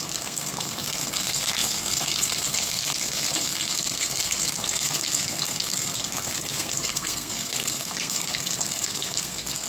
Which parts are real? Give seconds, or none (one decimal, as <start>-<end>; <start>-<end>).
none